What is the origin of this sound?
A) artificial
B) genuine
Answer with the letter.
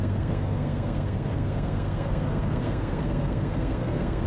A